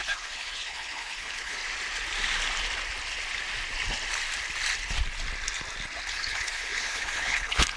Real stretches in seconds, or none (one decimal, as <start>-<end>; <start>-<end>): 1.6-6.1